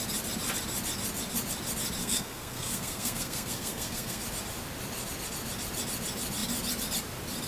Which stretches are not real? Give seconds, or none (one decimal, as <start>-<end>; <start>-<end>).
2.0-4.2